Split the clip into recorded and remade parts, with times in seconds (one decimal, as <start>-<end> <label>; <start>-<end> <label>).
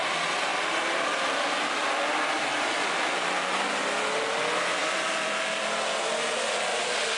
0.0-0.5 recorded; 0.5-4.2 remade; 4.2-4.8 recorded; 4.8-5.6 remade; 5.6-6.7 recorded; 6.7-7.2 remade